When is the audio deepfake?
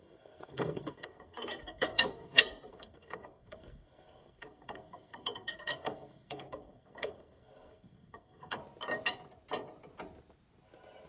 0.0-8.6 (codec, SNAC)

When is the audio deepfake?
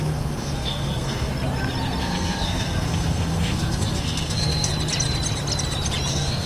0.0-1.3 (codec, SNAC); 2.0-4.7; 6.1-6.5